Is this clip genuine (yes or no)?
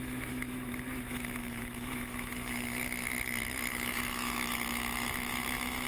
no